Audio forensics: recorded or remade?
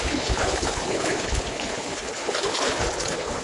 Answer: remade